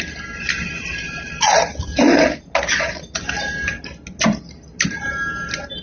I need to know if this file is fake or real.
real